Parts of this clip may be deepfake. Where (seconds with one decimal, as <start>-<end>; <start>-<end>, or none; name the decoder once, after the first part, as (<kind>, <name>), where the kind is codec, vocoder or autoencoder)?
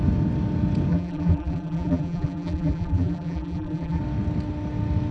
0.9-4.0 (vocoder, BigVGAN v2)